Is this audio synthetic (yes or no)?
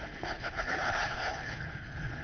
yes